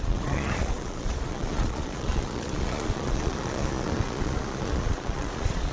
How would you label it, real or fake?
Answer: fake